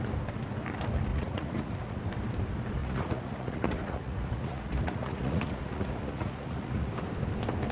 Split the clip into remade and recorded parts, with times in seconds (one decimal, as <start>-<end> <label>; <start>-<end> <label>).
0.0-1.1 recorded; 1.1-2.0 remade; 2.0-2.8 recorded; 2.8-6.9 remade; 6.9-7.7 recorded